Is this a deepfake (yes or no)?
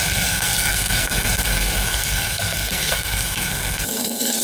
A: yes